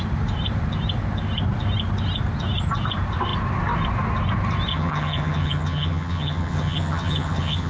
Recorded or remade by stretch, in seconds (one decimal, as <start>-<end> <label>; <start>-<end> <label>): 0.0-4.7 recorded; 4.7-7.7 remade